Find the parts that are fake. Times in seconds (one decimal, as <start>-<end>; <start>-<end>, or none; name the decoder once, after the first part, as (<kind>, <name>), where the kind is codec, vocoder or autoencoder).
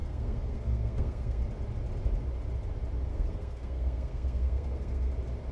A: 0.0-1.4 (codec, SNAC); 3.1-5.1